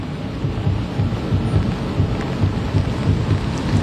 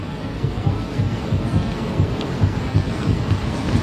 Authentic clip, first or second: first